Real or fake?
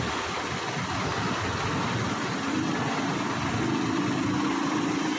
real